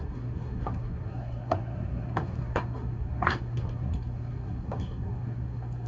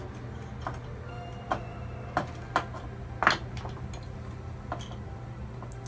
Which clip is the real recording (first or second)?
second